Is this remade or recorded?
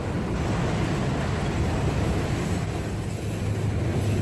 recorded